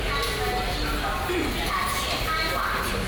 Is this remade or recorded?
recorded